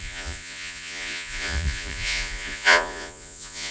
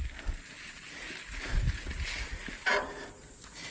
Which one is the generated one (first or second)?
first